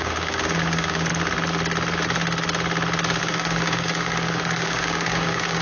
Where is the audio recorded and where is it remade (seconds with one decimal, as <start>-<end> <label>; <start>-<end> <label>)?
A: 0.0-1.1 remade; 1.1-3.2 recorded; 3.2-5.6 remade